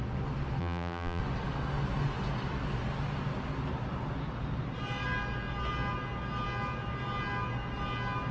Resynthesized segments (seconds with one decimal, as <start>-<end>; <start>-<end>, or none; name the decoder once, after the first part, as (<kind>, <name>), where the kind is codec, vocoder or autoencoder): 0.6-1.2 (vocoder, BigVGAN v2)